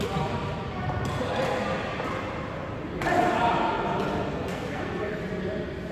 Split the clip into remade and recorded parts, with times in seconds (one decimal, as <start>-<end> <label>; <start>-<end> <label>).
0.0-4.3 recorded; 4.3-5.2 remade; 5.2-5.9 recorded